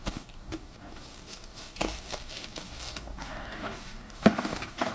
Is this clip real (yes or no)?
no